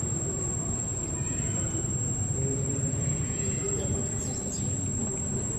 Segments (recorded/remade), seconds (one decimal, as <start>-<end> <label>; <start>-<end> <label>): 0.0-1.9 remade; 1.9-2.5 recorded; 2.5-4.0 remade; 4.0-5.6 recorded